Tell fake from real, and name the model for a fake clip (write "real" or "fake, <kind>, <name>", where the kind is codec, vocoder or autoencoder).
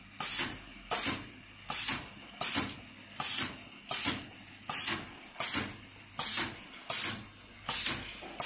real